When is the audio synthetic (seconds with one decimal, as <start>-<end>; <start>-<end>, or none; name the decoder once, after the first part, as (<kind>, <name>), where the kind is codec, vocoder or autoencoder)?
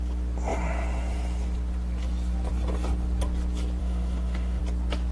3.8-4.6 (autoencoder, DAC-VAE)